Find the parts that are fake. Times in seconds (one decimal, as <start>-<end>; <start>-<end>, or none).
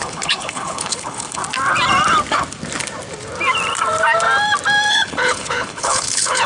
0.0-1.4; 4.9-6.5